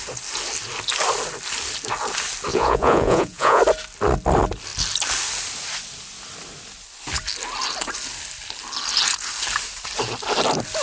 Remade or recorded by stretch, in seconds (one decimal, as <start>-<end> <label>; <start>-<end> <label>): 0.0-2.5 recorded; 2.5-3.6 remade; 3.6-10.8 recorded